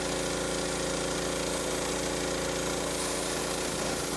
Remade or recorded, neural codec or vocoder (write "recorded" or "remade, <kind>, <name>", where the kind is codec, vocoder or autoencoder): recorded